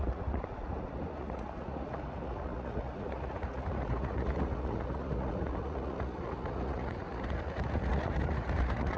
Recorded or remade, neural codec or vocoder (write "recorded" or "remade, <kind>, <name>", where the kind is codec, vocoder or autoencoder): remade, vocoder, Vocos